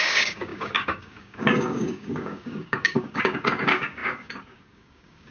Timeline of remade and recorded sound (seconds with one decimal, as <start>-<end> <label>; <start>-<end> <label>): 0.0-5.3 remade